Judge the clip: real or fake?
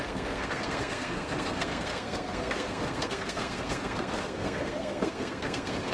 fake